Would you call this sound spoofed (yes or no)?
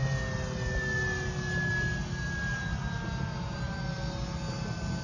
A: no